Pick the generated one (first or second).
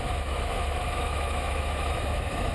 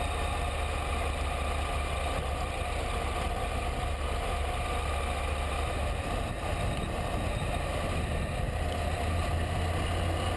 first